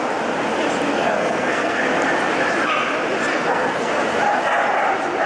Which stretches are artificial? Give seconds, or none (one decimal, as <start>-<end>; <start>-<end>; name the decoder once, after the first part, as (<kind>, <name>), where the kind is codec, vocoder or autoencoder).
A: 0.9-1.8 (codec, SNAC); 3.3-3.9